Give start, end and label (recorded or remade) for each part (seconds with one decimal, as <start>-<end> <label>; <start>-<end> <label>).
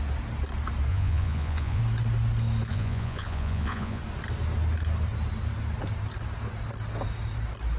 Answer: 0.0-0.9 recorded; 0.9-1.8 remade; 1.8-2.7 recorded; 2.7-4.0 remade; 4.0-7.8 recorded